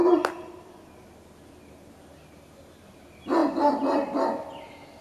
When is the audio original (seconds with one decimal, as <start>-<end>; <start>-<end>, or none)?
0.0-1.7; 3.4-5.0